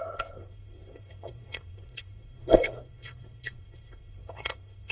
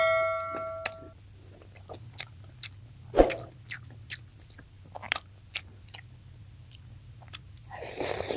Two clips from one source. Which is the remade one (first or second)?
first